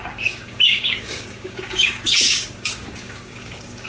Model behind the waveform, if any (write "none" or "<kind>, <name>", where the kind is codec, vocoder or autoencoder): codec, DAC